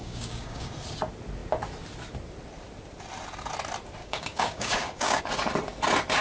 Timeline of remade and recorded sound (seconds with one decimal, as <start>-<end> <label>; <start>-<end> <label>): 0.0-0.7 remade; 0.7-4.0 recorded; 4.0-5.2 remade; 5.2-6.2 recorded